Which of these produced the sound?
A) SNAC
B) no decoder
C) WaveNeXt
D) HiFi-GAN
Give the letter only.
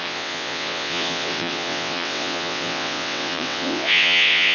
C